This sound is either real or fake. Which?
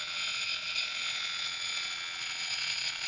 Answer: fake